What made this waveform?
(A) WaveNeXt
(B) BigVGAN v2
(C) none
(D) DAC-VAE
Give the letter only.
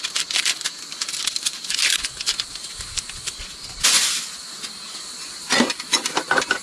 C